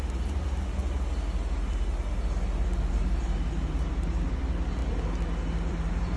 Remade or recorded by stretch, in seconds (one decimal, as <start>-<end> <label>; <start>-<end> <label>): 0.0-0.8 remade; 0.8-2.9 recorded; 2.9-4.8 remade; 4.8-5.7 recorded; 5.7-6.2 remade